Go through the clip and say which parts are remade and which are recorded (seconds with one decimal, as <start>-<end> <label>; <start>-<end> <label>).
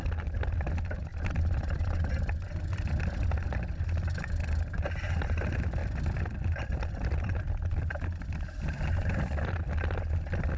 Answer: 0.0-5.8 recorded; 5.8-9.5 remade; 9.5-10.6 recorded